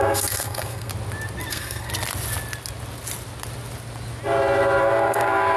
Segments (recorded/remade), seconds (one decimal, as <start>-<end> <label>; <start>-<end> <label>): 0.0-0.9 remade; 0.9-1.5 recorded; 1.5-1.9 remade; 1.9-4.8 recorded; 4.8-5.6 remade